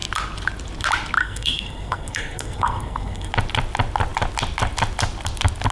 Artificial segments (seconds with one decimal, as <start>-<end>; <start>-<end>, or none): 1.2-3.3